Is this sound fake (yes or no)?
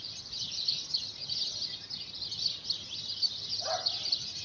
no